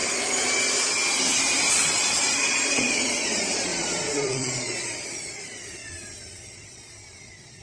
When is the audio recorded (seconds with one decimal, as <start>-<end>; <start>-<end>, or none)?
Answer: 0.0-1.7